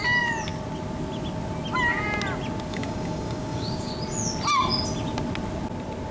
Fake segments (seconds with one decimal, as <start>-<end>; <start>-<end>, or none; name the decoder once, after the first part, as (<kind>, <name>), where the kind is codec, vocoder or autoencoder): 2.7-3.9 (codec, DAC)